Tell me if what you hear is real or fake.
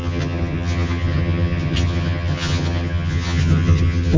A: fake